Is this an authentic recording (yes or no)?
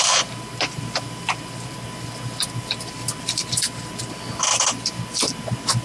yes